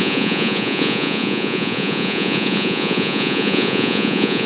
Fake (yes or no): yes